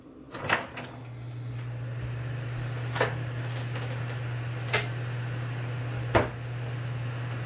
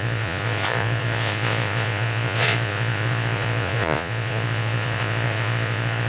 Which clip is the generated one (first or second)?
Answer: second